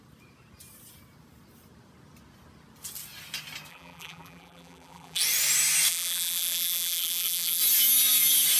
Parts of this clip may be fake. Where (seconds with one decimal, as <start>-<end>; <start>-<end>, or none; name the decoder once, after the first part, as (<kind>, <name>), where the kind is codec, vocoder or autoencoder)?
3.7-5.2 (vocoder, BigVGAN v2); 5.9-7.6